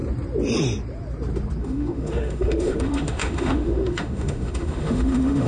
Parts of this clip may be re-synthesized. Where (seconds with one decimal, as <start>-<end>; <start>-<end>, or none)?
1.6-5.5